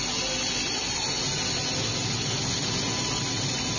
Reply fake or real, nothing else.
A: real